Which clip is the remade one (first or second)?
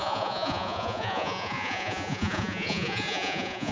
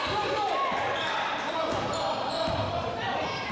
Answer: first